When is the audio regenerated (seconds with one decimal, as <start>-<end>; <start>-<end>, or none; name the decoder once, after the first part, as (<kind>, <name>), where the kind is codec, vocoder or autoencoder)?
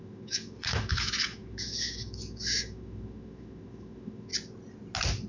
0.0-4.3 (autoencoder, DAC-VAE)